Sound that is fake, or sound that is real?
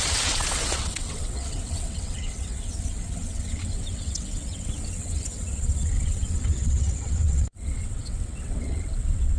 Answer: fake